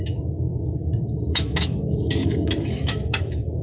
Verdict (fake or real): fake